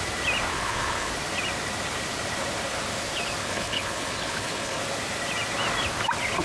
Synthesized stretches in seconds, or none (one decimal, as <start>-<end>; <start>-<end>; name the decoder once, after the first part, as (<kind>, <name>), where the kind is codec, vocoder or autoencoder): 0.5-1.1 (codec, HILCodec); 3.4-4.8